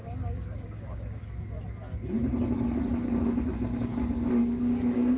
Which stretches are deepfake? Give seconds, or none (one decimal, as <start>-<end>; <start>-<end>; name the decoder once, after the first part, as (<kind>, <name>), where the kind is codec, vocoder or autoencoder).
0.0-1.2 (codec, DAC); 4.3-5.2